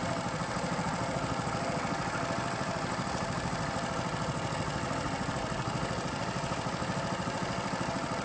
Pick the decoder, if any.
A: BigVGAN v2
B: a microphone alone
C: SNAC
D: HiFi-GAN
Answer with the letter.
A